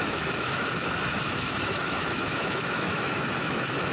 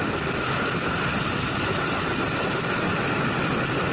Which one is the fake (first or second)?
first